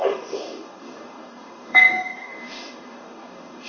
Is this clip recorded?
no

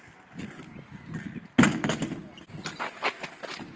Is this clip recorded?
yes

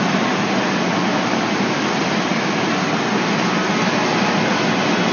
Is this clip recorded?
yes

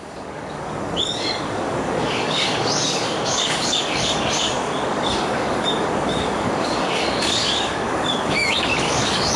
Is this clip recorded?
no